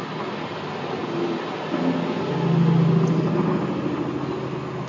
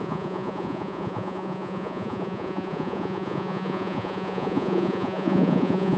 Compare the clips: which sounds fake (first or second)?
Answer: second